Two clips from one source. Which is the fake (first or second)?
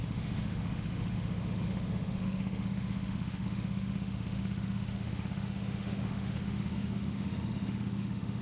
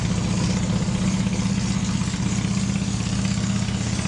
first